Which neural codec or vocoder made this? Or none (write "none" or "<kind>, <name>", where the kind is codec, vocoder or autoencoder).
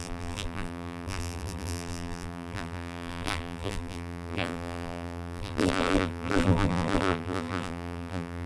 vocoder, BigVGAN v2